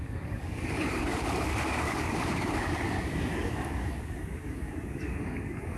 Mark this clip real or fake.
fake